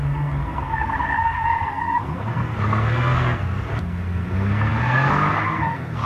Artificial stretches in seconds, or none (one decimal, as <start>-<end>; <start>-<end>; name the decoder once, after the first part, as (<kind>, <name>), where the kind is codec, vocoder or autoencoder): 0.0-6.1 (codec, SNAC)